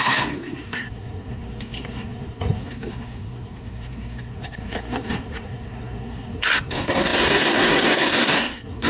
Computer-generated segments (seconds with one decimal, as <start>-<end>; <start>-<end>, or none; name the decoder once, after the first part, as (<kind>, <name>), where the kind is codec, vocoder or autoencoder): 0.0-8.9 (codec, SNAC)